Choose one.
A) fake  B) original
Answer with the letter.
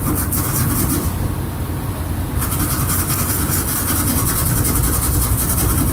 B